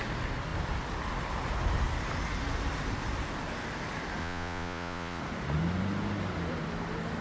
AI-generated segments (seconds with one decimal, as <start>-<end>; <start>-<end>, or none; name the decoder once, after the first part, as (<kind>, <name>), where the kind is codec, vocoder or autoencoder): 4.2-5.2 (vocoder, Vocos)